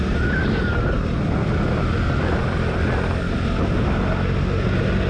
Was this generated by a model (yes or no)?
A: no